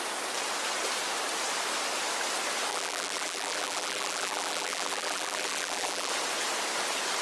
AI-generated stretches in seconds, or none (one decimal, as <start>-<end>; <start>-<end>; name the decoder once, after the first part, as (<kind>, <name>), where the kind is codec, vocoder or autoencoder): 2.7-6.1 (vocoder, BigVGAN v2)